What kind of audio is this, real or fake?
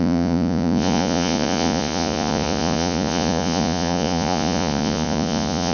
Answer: fake